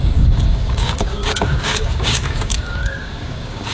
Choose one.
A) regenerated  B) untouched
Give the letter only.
A